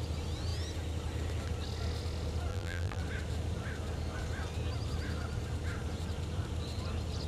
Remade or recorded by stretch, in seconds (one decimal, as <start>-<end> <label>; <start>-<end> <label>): 0.0-2.5 recorded; 2.5-3.0 remade; 3.0-7.3 recorded